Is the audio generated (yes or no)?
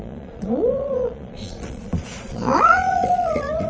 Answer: yes